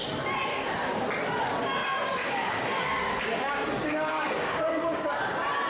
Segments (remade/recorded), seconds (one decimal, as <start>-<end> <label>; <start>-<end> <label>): 0.0-0.5 recorded; 0.5-1.0 remade; 1.0-1.8 recorded; 1.8-5.2 remade; 5.2-5.7 recorded